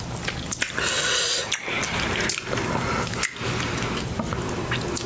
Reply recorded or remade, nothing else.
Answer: recorded